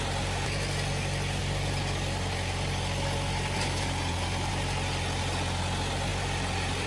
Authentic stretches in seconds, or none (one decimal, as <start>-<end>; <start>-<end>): 0.0-1.4; 4.5-6.1